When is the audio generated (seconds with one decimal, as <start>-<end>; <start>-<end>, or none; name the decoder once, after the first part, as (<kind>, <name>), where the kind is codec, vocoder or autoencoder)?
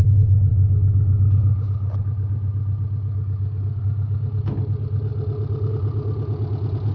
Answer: none